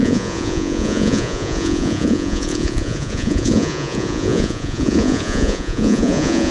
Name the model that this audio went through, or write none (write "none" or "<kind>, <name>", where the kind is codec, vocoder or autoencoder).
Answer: vocoder, Vocos